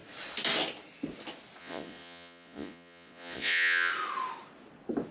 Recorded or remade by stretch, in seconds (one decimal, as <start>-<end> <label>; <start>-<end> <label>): 0.0-1.6 recorded; 1.6-3.9 remade; 3.9-5.1 recorded

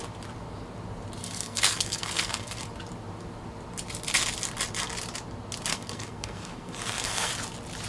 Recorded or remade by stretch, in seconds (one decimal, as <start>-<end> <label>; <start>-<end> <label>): 0.0-1.2 recorded; 1.2-2.7 remade; 2.7-5.7 recorded; 5.7-7.3 remade; 7.3-7.9 recorded